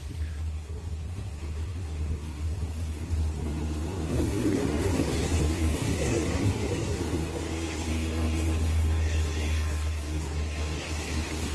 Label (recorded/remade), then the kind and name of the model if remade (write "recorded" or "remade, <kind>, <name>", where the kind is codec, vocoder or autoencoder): remade, codec, SNAC